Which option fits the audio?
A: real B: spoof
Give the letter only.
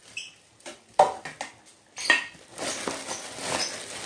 A